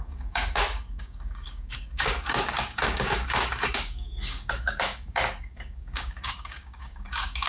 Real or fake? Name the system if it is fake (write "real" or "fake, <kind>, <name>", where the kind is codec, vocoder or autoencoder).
fake, codec, DAC